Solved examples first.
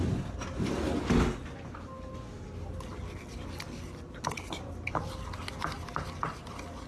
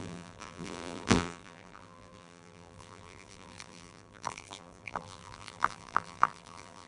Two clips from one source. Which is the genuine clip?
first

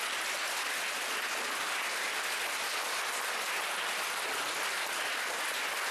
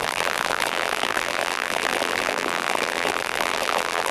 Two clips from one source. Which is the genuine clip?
first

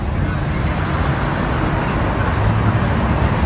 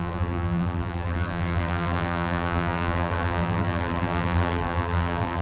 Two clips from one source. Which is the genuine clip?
first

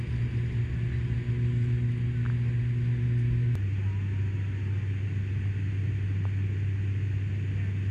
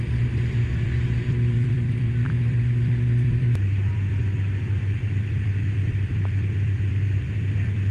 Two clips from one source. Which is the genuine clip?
first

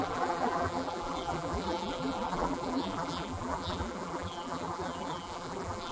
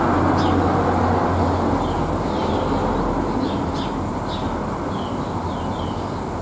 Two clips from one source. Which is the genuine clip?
second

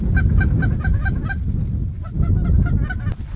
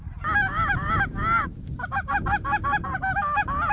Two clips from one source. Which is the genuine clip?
first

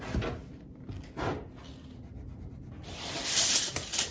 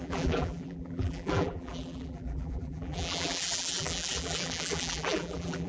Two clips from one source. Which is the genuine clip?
first